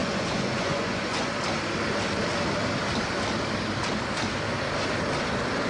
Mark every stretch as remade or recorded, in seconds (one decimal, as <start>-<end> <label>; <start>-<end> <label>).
0.0-1.3 remade; 1.3-5.7 recorded